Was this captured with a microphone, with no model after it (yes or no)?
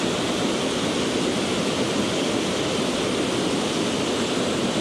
yes